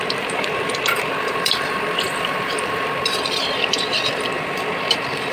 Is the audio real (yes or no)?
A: no